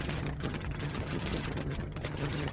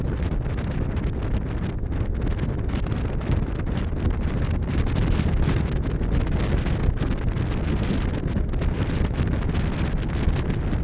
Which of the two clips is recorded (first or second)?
second